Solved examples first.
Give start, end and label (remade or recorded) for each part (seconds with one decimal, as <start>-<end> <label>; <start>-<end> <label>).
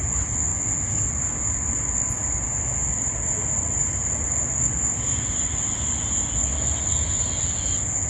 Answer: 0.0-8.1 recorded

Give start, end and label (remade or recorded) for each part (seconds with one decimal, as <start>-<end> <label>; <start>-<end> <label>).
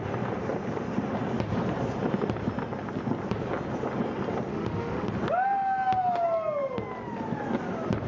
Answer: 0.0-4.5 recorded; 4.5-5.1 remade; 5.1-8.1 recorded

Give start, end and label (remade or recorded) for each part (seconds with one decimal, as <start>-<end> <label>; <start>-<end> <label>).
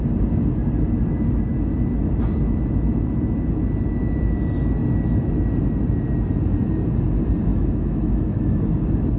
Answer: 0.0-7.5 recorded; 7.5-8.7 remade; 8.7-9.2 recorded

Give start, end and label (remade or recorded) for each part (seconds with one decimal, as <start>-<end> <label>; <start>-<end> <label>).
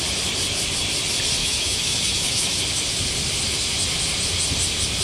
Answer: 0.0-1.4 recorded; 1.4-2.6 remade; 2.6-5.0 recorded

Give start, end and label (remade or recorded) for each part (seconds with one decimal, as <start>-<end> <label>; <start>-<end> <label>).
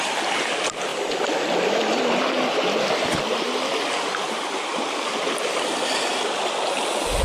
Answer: 0.0-7.2 recorded